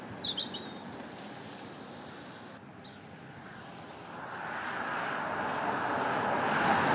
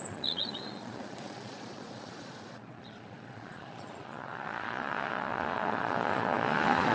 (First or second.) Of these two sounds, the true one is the first